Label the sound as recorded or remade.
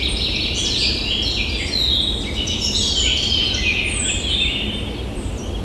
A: recorded